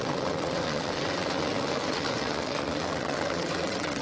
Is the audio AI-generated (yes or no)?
yes